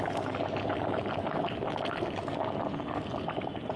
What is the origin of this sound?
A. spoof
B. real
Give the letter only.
B